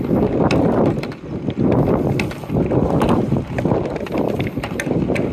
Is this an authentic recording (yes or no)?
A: yes